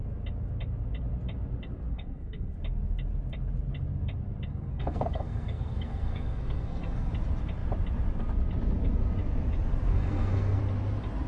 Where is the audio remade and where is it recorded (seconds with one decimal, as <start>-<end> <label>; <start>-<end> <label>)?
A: 0.0-1.9 recorded; 1.9-2.5 remade; 2.5-4.5 recorded; 4.5-7.1 remade; 7.1-9.9 recorded; 9.9-10.6 remade; 10.6-11.3 recorded